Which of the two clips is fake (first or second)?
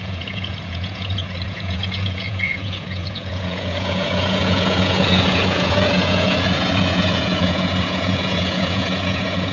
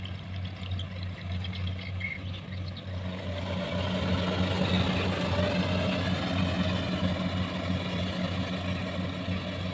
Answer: first